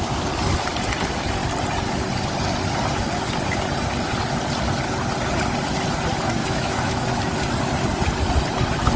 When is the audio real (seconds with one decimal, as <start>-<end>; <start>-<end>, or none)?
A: 0.0-6.4; 7.2-9.0